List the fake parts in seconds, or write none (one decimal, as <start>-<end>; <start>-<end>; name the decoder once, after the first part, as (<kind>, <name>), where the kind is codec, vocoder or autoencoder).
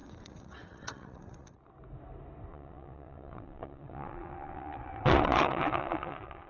0.0-1.5 (vocoder, WaveNeXt); 2.5-6.5